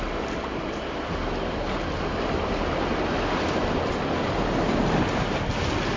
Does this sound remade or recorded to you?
recorded